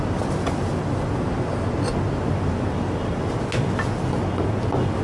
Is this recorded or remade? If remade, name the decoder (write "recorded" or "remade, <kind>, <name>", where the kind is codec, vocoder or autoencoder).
recorded